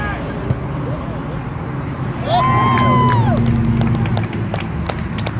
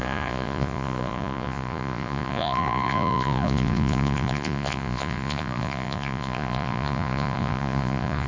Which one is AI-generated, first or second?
second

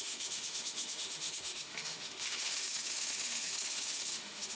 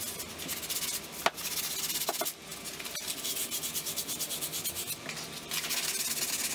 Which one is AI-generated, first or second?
first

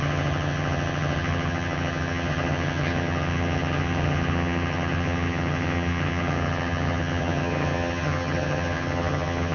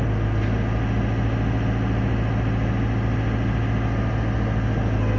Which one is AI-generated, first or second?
first